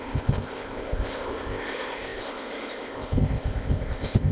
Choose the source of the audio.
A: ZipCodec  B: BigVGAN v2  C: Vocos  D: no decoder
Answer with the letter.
A